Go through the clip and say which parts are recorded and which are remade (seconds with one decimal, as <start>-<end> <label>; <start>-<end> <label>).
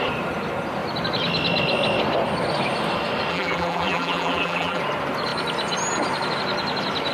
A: 0.0-3.3 recorded; 3.3-4.8 remade; 4.8-7.1 recorded